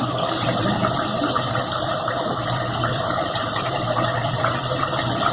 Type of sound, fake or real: fake